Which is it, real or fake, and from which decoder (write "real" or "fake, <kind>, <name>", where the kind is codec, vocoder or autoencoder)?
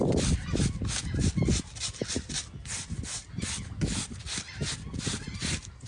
real